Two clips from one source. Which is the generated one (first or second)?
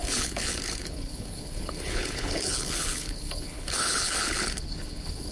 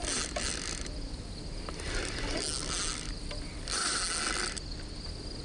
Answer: first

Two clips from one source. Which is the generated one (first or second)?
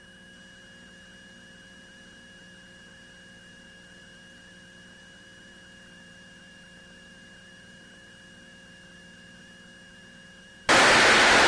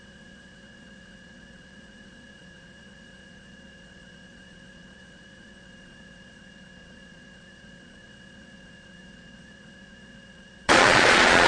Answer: second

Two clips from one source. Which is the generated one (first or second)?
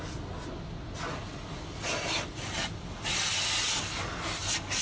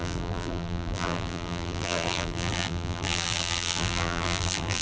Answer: second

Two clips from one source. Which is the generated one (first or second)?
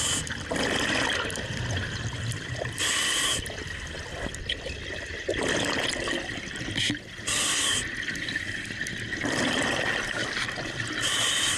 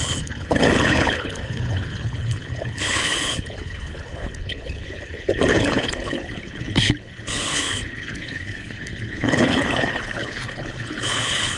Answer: second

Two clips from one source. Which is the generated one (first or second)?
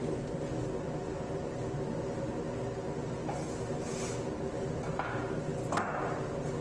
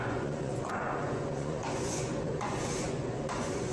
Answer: second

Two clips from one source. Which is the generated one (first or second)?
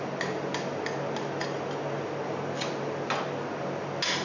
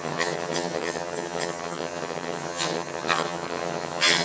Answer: second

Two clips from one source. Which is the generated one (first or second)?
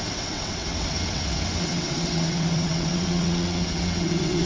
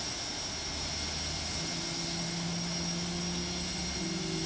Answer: first